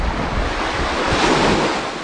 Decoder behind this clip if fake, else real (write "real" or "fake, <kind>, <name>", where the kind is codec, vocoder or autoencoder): real